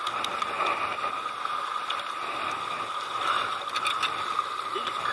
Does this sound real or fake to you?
real